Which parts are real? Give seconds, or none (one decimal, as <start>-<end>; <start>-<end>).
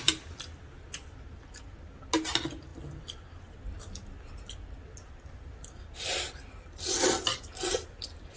0.0-8.4